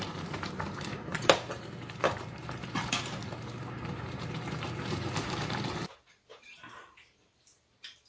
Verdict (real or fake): fake